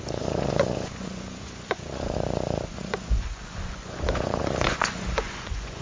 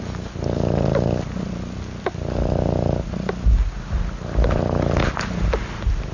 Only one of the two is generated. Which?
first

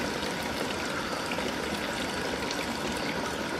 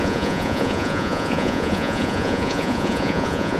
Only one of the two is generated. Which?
second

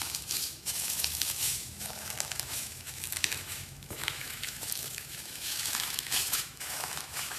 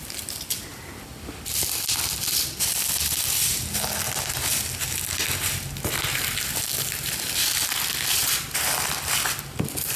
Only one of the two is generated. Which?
first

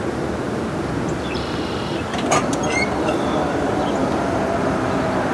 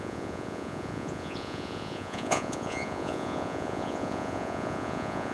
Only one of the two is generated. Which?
second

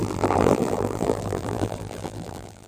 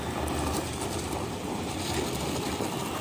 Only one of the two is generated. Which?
first